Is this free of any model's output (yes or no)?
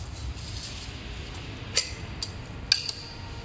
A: yes